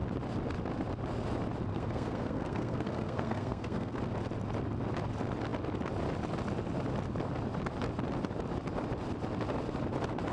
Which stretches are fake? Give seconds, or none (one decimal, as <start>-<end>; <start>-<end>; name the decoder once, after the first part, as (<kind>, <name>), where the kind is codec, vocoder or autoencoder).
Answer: 1.7-3.9 (codec, SNAC)